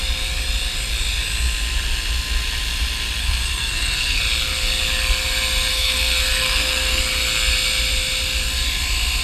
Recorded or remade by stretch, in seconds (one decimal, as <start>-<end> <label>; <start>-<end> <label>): 0.0-3.2 recorded; 3.2-4.2 remade; 4.2-5.7 recorded; 5.7-7.0 remade; 7.0-9.2 recorded